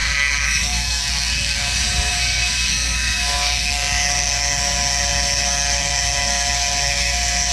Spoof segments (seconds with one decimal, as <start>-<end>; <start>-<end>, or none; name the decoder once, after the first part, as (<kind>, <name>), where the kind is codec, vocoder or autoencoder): 0.0-7.5 (codec, SNAC)